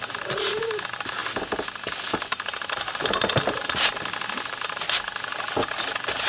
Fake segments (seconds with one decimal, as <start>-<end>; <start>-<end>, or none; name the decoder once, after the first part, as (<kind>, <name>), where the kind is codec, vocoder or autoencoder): none